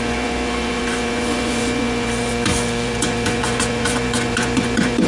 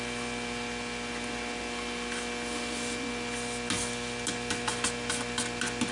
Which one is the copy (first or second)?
first